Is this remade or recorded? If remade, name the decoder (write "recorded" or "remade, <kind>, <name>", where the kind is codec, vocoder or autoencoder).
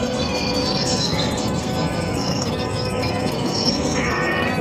remade, codec, SNAC